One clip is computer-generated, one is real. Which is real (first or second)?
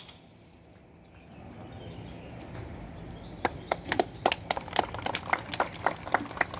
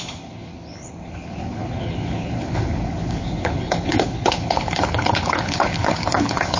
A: first